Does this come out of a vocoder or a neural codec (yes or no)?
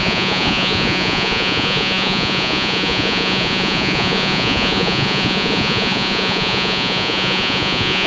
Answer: yes